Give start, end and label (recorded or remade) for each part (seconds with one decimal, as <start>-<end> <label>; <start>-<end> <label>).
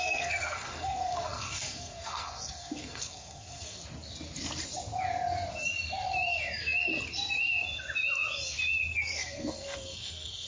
0.0-3.8 remade; 3.8-8.9 recorded; 8.9-10.5 remade